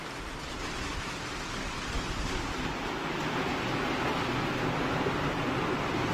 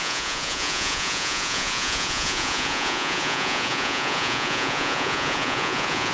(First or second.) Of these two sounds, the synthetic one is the second